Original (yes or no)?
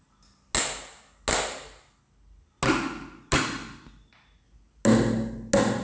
yes